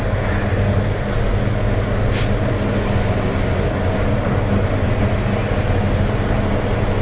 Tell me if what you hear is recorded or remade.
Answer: recorded